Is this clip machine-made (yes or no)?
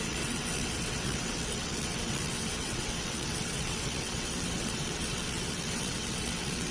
yes